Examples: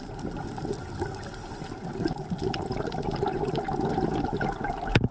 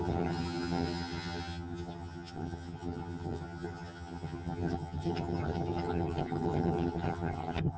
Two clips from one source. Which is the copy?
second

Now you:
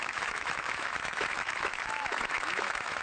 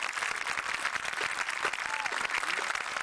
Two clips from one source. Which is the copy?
first